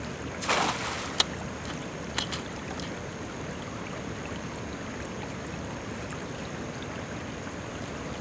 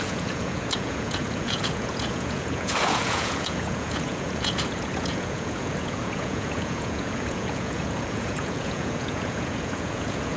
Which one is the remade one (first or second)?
second